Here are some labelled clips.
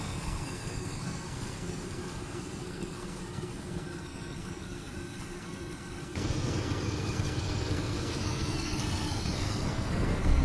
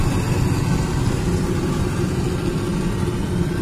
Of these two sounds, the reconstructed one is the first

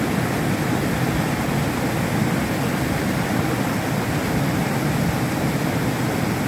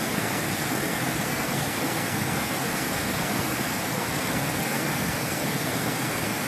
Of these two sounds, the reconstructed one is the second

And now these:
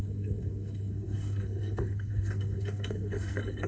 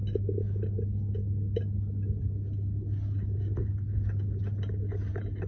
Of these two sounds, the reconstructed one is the first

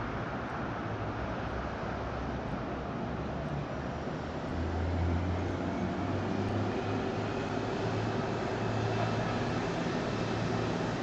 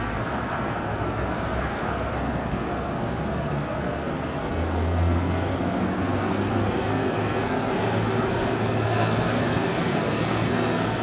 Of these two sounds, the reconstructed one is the second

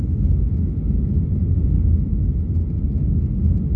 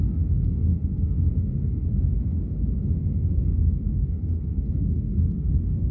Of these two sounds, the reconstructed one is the second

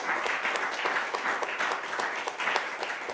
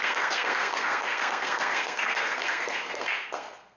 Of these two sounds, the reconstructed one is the second